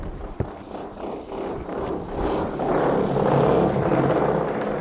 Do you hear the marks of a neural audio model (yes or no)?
no